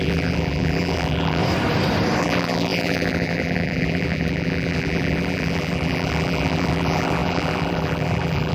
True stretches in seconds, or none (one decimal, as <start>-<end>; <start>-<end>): 1.4-2.2